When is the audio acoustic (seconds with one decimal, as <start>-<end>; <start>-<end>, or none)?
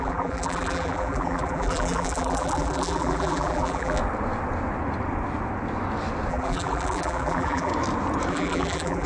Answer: 4.0-6.3; 7.7-8.3